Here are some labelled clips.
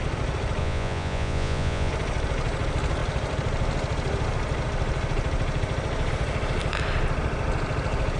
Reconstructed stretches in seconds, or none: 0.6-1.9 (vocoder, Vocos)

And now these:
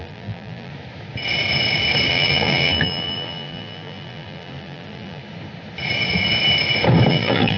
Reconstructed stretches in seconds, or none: 0.0-0.7 (vocoder, BigVGAN v2); 2.1-5.2; 7.1-7.6

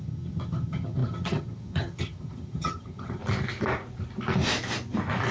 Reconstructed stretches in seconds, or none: 0.0-3.2 (vocoder, HiFi-GAN)

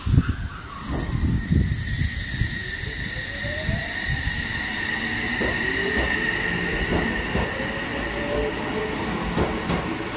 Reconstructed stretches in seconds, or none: none

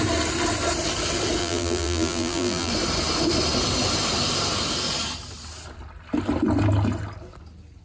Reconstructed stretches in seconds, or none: 1.4-2.7 (vocoder, BigVGAN v2)

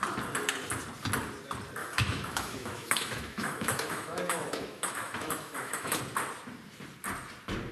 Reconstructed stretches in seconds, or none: 1.8-6.0 (autoencoder, DAC-VAE)